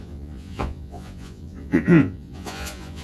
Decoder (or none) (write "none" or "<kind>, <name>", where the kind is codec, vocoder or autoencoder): vocoder, Vocos